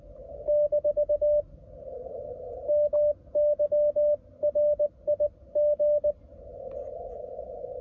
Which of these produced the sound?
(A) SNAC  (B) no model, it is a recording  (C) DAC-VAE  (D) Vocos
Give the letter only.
B